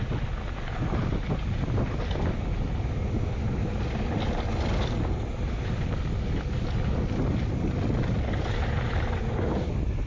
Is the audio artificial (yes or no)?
no